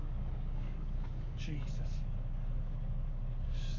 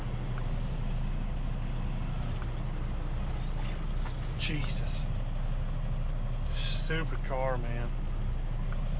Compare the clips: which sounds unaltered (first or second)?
second